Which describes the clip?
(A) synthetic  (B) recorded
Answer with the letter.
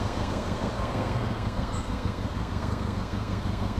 A